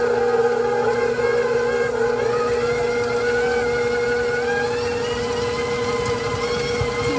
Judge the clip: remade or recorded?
recorded